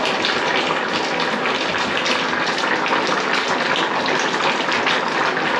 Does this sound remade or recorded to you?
recorded